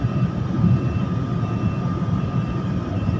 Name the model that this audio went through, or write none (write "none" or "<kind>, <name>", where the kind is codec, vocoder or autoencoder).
none